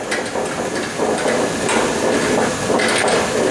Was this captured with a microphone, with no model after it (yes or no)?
yes